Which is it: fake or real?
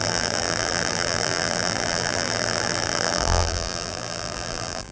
fake